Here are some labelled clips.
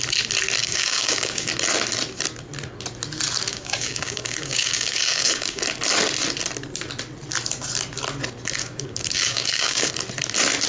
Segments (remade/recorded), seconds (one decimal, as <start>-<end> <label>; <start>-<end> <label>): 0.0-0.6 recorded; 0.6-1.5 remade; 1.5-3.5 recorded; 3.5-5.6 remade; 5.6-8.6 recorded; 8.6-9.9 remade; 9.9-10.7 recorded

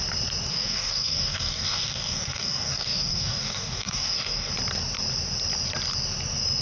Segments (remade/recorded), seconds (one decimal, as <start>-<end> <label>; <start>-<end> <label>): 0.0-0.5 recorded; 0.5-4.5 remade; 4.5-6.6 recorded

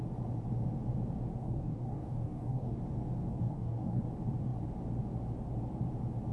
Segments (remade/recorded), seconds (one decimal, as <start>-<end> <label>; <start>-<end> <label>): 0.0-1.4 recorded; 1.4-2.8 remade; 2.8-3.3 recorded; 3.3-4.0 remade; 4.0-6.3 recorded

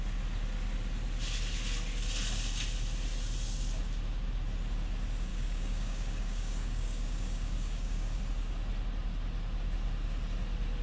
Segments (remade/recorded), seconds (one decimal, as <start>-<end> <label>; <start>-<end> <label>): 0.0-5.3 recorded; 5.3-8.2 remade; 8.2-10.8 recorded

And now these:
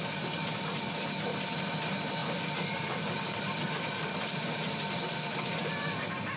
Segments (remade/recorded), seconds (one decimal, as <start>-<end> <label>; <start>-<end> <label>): 0.0-6.4 recorded

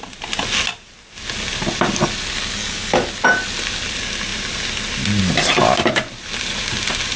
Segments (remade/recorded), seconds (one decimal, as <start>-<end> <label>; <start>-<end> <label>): 0.0-2.6 recorded; 2.6-3.1 remade; 3.1-7.2 recorded